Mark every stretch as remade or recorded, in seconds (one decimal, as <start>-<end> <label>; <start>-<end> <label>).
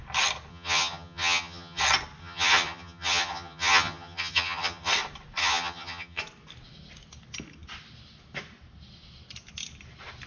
0.0-0.5 recorded; 0.5-1.8 remade; 1.8-2.2 recorded; 2.2-4.9 remade; 4.9-5.4 recorded; 5.4-6.2 remade; 6.2-10.3 recorded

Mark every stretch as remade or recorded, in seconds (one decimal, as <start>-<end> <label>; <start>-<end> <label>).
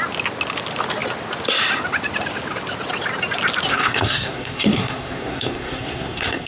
0.0-3.7 recorded; 3.7-6.5 remade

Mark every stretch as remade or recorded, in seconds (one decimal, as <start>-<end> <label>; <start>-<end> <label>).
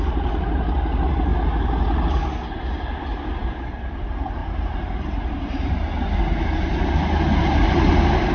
0.0-4.4 recorded; 4.4-5.8 remade; 5.8-7.4 recorded; 7.4-7.9 remade; 7.9-8.3 recorded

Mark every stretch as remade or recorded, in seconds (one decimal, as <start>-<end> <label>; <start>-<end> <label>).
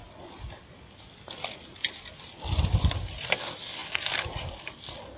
0.0-5.2 recorded